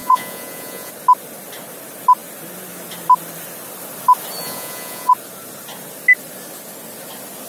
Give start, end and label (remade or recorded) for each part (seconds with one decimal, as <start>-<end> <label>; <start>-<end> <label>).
0.0-0.9 remade; 0.9-4.4 recorded; 4.4-5.1 remade; 5.1-7.5 recorded